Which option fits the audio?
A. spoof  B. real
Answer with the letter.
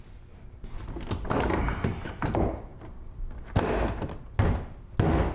B